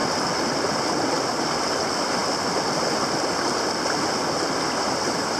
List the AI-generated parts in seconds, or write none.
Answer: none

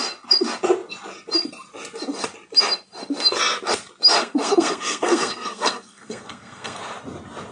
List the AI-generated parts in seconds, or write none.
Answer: 4.2-6.8 (codec, SNAC)

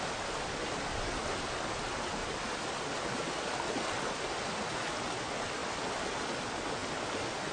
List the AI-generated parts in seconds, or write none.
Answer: none

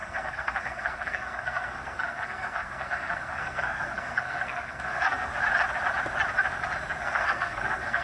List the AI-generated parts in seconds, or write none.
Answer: 0.0-5.3 (codec, SNAC); 7.0-8.0